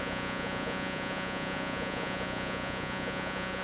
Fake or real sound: fake